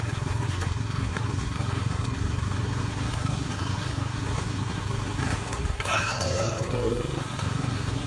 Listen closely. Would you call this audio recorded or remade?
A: remade